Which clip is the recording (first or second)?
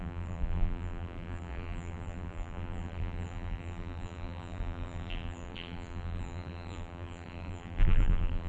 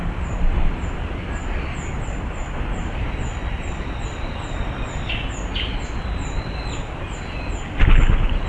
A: second